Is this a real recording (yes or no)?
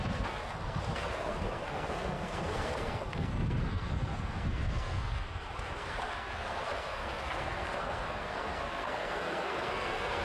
no